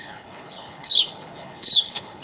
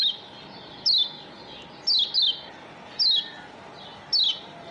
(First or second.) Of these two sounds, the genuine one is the second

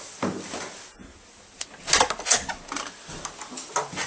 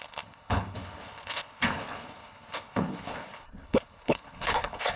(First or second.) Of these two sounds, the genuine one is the first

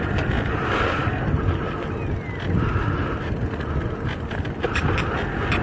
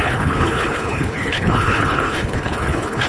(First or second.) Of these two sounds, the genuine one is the first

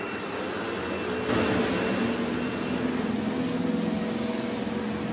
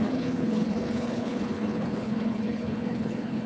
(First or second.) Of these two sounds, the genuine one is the first